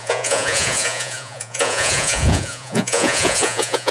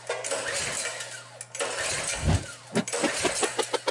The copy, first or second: first